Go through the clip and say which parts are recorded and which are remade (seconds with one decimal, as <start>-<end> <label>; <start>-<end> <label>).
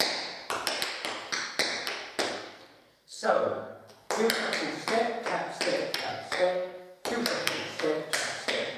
0.0-2.3 recorded; 2.3-4.1 remade; 4.1-6.1 recorded; 6.1-7.0 remade; 7.0-7.4 recorded; 7.4-8.0 remade; 8.0-8.8 recorded